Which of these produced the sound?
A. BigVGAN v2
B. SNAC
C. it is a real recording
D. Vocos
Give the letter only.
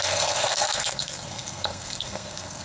B